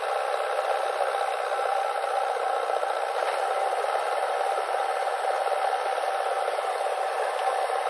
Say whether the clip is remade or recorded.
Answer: recorded